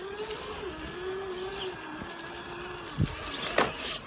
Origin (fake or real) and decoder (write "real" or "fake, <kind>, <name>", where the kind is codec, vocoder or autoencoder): real